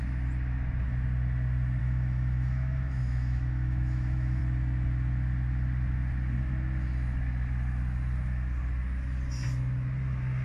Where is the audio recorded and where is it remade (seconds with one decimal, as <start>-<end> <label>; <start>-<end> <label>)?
0.0-1.8 recorded; 1.8-4.4 remade; 4.4-10.4 recorded